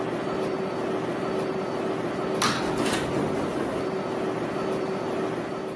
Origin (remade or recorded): recorded